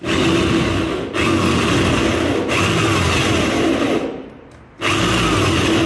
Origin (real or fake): real